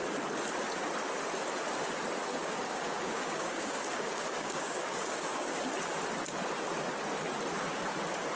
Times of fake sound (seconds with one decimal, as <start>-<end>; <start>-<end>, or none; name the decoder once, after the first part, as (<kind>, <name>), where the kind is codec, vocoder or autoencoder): 2.3-5.6 (codec, DAC)